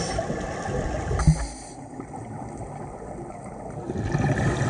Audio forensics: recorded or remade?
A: recorded